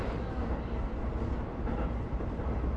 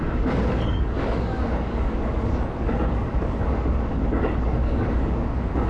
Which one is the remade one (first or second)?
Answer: second